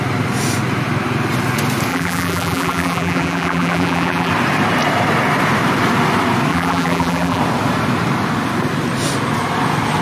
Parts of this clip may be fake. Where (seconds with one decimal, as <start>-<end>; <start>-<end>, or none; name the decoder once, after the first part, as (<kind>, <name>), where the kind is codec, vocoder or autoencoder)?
1.9-4.3 (vocoder, BigVGAN v2); 6.5-7.4